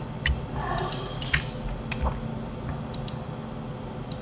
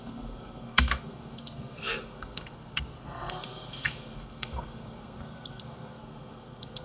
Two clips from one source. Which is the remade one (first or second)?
second